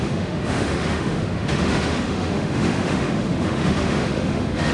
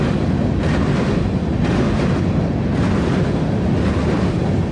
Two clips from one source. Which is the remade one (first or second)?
first